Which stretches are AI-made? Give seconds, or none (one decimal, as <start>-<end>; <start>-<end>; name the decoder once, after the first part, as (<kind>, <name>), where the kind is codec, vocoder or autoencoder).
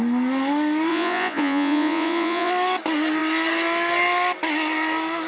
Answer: 0.9-2.5 (vocoder, Vocos)